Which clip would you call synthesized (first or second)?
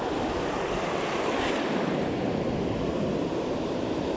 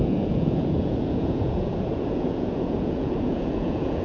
second